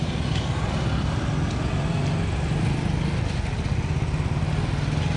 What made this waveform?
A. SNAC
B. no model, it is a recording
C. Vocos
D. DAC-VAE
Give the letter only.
B